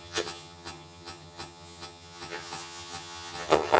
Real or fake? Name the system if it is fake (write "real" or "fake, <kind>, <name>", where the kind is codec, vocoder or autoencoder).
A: fake, vocoder, HiFi-GAN